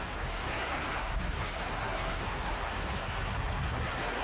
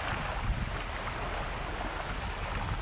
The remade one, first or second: first